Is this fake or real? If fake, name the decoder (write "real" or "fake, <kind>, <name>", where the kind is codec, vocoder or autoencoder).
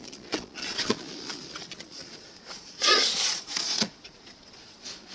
fake, vocoder, Vocos